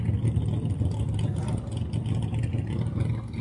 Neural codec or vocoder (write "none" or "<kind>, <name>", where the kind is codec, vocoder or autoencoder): none